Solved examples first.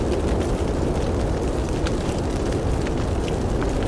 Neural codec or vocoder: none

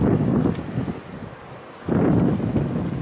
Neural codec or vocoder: none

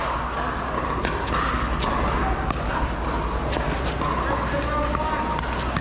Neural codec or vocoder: none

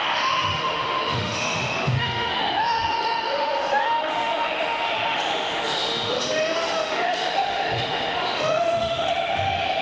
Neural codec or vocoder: autoencoder, DAC-VAE